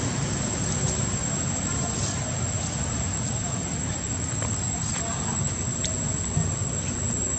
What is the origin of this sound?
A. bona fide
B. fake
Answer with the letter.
A